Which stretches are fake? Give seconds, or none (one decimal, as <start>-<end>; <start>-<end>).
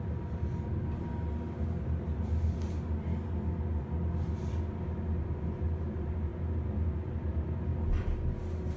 none